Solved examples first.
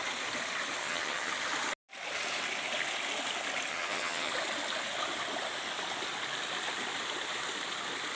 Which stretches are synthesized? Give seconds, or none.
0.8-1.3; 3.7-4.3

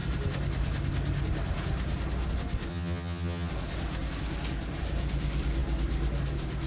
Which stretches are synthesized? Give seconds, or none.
2.7-3.5